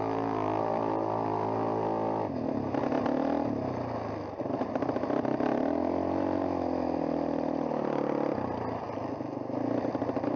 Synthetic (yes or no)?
no